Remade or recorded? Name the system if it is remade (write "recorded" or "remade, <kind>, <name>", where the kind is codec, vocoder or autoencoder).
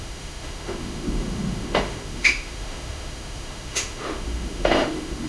remade, autoencoder, DAC-VAE